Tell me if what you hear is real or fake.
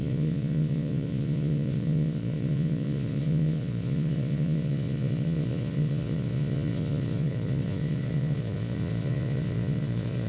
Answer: fake